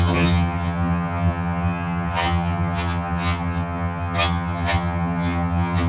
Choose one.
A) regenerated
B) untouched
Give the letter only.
A